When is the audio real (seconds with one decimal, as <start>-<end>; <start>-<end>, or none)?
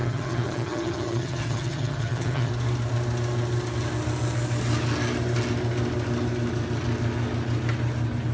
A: 2.5-8.3